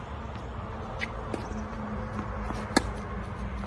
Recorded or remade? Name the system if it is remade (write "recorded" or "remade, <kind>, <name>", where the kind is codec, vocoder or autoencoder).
recorded